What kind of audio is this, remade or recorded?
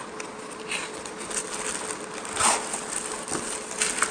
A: recorded